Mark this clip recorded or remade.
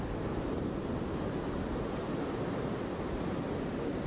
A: recorded